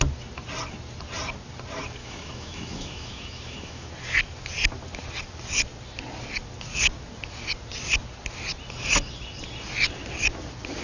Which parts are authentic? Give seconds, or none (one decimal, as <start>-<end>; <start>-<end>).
0.0-2.0; 3.9-10.8